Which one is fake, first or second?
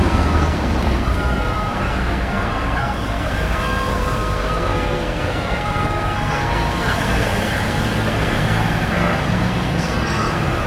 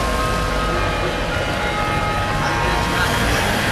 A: first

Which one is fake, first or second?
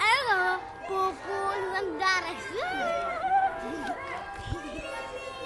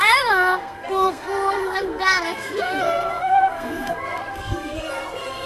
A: second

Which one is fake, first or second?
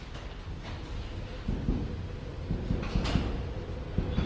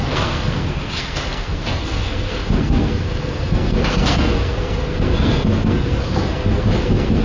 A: second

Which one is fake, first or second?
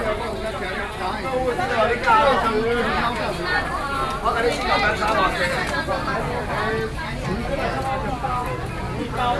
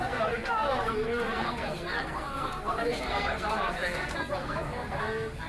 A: second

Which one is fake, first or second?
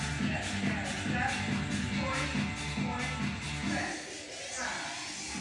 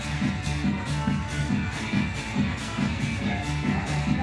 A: second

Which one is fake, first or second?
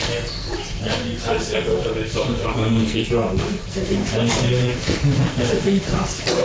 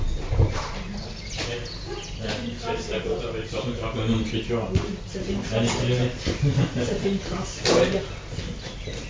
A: first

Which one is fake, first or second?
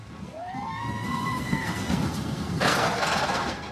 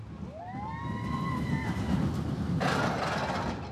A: first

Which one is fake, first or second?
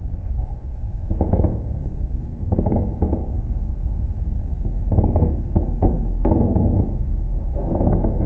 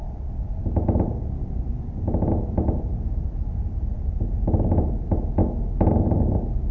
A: first